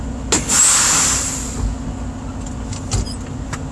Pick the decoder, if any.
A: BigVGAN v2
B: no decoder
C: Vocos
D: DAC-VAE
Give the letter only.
B